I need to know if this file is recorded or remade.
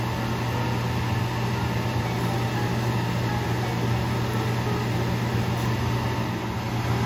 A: recorded